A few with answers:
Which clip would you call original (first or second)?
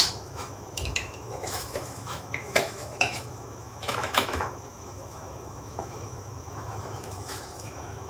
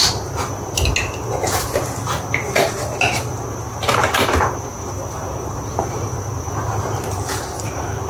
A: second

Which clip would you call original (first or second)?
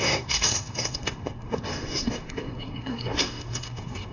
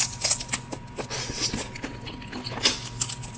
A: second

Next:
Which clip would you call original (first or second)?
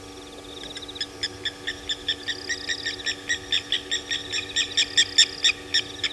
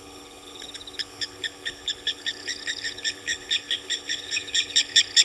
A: first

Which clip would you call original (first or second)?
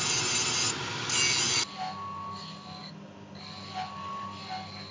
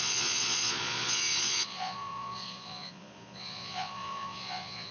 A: first